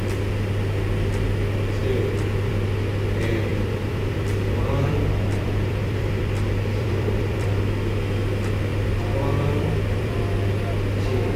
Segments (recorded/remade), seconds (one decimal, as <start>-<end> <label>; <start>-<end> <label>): 0.0-3.5 recorded; 3.5-7.6 remade; 7.6-8.7 recorded; 8.7-10.2 remade; 10.2-11.4 recorded